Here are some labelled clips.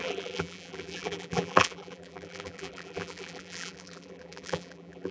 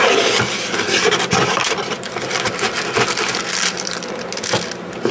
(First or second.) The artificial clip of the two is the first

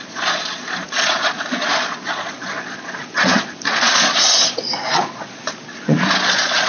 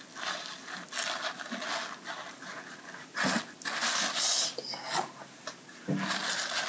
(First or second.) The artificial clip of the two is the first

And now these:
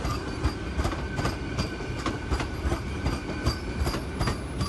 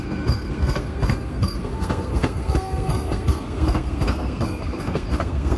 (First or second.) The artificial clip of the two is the second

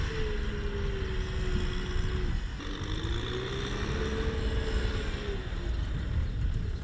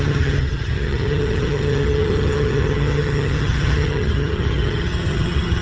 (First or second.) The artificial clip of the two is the second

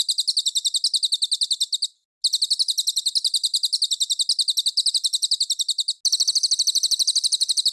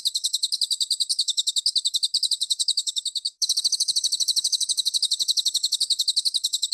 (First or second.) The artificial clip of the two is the second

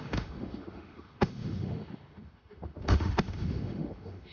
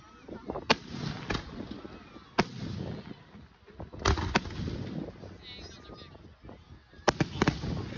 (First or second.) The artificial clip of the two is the first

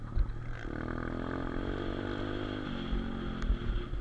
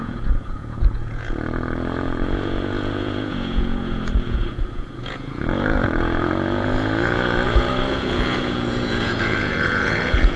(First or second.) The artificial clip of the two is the second